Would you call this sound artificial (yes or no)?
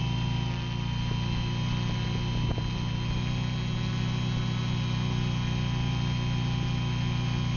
no